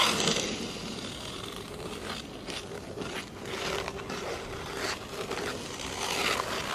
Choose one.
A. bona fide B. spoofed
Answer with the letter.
A